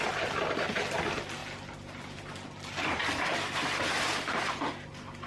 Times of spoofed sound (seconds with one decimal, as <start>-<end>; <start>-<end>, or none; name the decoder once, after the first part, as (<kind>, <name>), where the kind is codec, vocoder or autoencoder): none